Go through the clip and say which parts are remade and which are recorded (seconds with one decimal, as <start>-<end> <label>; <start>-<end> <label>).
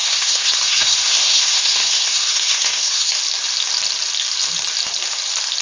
0.0-3.2 remade; 3.2-5.6 recorded